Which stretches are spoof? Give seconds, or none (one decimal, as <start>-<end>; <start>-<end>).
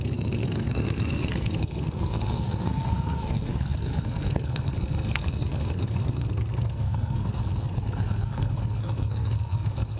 0.0-10.0